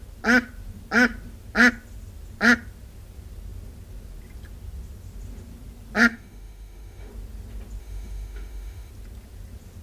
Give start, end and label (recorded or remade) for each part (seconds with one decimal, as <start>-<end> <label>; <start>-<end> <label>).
0.0-6.1 recorded; 6.1-7.1 remade; 7.1-7.8 recorded; 7.8-8.9 remade; 8.9-9.8 recorded